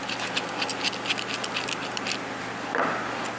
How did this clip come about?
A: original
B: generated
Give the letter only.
A